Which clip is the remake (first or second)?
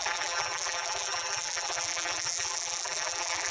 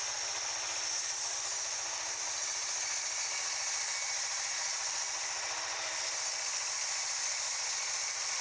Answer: first